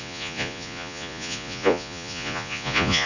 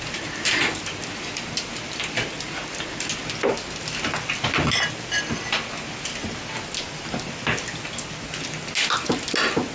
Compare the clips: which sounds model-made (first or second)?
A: first